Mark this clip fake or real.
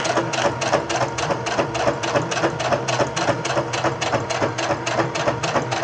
real